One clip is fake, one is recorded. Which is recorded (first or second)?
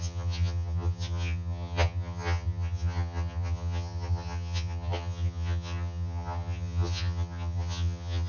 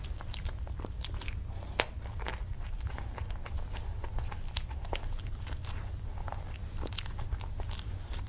second